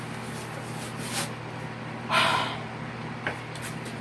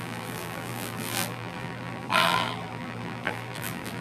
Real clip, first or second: first